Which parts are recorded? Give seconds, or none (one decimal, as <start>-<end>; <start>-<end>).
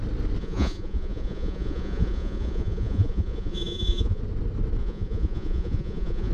0.0-0.4; 4.2-4.8